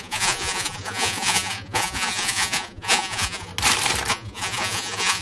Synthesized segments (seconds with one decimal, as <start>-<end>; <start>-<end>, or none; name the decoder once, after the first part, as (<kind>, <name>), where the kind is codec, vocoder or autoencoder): 0.0-3.5 (vocoder, Vocos); 4.1-5.2

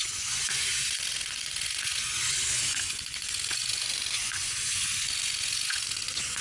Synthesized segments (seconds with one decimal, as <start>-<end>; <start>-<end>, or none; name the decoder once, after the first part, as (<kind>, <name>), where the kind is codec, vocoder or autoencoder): 0.0-6.4 (vocoder, Vocos)

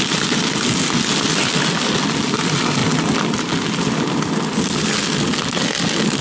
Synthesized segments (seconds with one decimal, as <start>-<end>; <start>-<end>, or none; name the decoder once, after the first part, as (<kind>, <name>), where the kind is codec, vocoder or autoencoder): none

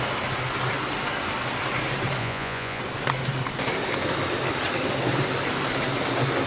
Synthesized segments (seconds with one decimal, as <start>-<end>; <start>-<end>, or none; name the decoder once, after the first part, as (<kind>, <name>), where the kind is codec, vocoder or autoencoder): 2.2-2.8 (vocoder, Vocos)